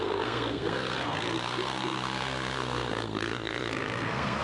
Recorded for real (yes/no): no